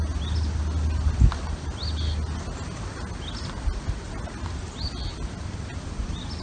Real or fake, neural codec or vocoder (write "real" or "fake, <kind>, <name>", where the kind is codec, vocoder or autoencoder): real